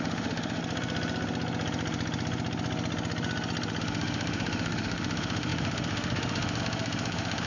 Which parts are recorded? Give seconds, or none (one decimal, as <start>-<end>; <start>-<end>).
0.6-3.8